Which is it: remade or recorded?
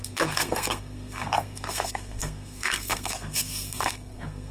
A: remade